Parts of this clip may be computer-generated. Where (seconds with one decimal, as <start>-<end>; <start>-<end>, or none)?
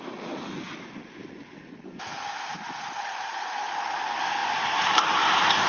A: 1.2-2.0; 4.4-5.0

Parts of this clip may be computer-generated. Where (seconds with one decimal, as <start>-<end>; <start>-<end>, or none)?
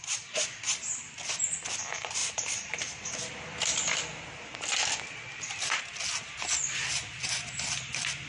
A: 2.2-5.8